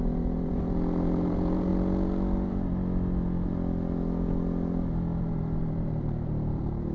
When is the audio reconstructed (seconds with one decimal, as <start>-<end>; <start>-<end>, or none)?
0.0-1.7; 5.2-6.9